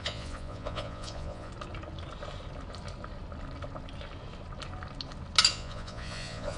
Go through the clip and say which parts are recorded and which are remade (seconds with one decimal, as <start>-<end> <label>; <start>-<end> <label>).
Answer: 0.0-1.5 remade; 1.5-5.5 recorded; 5.5-6.6 remade